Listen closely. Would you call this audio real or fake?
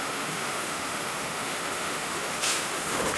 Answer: fake